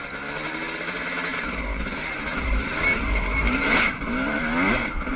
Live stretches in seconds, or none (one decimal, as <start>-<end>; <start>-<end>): 0.0-1.3; 4.4-5.2